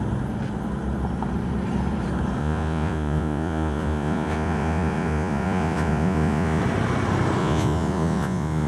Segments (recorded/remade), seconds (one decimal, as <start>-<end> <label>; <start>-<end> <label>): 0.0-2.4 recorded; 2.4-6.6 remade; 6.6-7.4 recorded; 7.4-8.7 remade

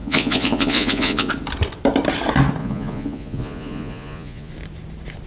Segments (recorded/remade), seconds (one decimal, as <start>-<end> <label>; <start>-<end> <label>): 0.0-1.3 remade; 1.3-2.6 recorded; 2.6-4.5 remade; 4.5-5.3 recorded

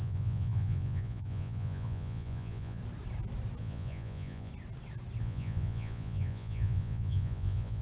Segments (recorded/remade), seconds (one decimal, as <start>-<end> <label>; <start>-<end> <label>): 0.0-2.8 remade; 2.8-3.6 recorded; 3.6-4.5 remade; 4.5-5.2 recorded; 5.2-7.8 remade

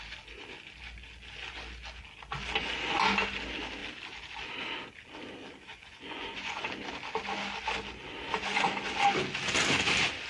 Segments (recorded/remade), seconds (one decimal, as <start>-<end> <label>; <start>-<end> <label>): 0.0-5.7 recorded; 5.7-6.6 remade; 6.6-10.3 recorded

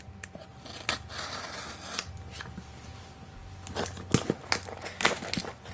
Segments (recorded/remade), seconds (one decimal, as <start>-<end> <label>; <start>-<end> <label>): 0.0-5.7 recorded

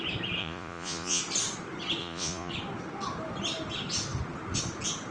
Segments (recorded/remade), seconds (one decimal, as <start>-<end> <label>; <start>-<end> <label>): 0.0-0.4 recorded; 0.4-1.2 remade; 1.2-2.0 recorded; 2.0-2.5 remade; 2.5-5.1 recorded